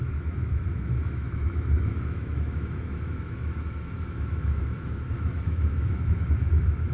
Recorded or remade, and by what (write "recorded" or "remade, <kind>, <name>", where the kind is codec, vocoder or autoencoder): remade, autoencoder, DAC-VAE